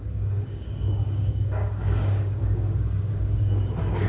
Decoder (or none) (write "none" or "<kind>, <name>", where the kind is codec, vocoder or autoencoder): codec, DAC